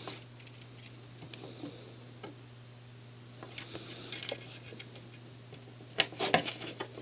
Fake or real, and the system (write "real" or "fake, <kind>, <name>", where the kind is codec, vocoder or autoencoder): real